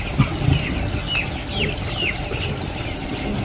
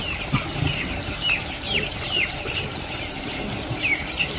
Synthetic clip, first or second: second